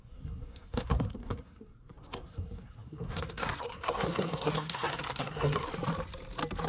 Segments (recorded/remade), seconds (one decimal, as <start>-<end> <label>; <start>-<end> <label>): 0.0-5.7 remade; 5.7-6.7 recorded